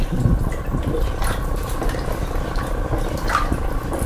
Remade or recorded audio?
recorded